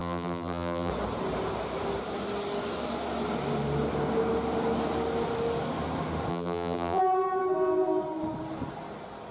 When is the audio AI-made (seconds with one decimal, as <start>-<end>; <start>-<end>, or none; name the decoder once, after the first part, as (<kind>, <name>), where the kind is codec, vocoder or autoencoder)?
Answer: 0.0-0.9 (vocoder, BigVGAN v2); 6.3-7.0